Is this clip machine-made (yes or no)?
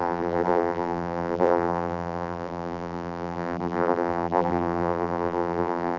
yes